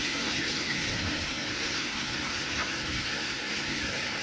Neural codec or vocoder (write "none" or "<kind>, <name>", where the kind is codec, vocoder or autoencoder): codec, SNAC